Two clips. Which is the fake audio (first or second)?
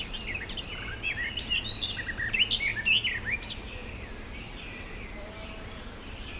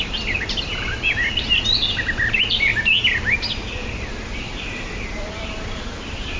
second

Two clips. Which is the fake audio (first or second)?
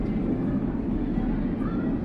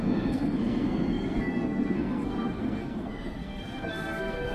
second